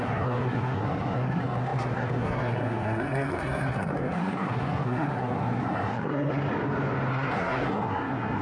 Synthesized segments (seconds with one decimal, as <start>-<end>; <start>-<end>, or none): 0.0-6.4; 7.1-8.4